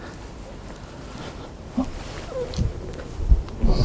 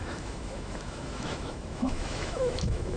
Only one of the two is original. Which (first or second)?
first